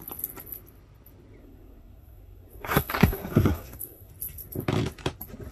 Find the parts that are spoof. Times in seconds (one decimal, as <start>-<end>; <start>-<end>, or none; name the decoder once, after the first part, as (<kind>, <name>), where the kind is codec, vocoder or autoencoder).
1.4-4.1 (codec, SNAC)